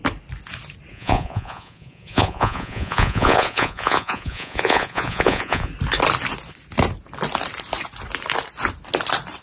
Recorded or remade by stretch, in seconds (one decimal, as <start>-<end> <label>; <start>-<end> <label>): 0.0-0.9 recorded; 0.9-5.7 remade; 5.7-9.4 recorded